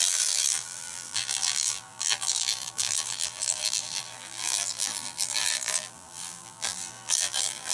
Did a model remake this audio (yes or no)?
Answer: yes